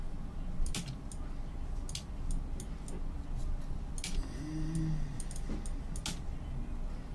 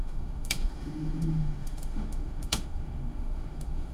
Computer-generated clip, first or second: second